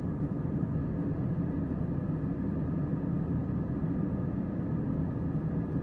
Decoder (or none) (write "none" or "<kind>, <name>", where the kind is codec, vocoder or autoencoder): none